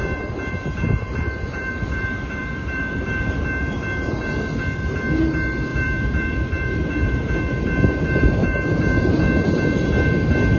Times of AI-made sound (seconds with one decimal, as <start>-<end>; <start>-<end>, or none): 0.0-4.6; 5.7-9.9